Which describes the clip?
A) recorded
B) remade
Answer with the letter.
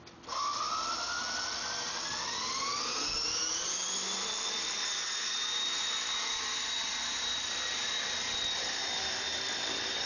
A